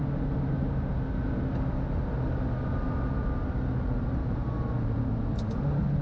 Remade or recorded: recorded